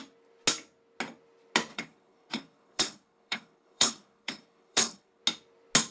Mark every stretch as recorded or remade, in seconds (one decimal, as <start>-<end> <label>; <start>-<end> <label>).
0.0-1.7 recorded; 1.7-5.2 remade; 5.2-5.9 recorded